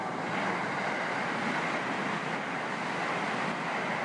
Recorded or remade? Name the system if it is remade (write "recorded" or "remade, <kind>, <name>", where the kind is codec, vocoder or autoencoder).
recorded